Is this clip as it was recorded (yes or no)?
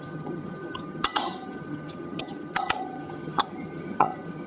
no